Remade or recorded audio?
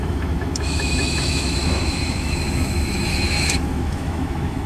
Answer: remade